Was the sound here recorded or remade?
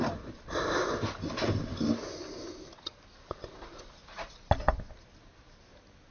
recorded